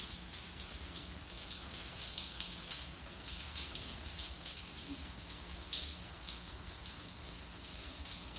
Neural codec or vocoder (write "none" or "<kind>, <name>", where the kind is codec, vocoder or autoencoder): codec, SNAC